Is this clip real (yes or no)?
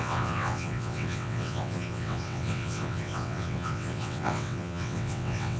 no